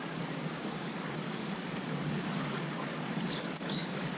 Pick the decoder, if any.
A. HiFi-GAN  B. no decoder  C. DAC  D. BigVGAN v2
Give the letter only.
C